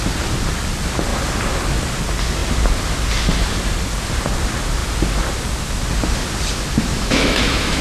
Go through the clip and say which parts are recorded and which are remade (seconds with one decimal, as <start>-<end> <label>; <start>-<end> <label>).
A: 0.0-6.9 recorded; 6.9-7.8 remade